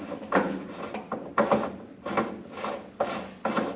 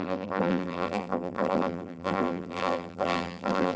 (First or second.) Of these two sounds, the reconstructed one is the second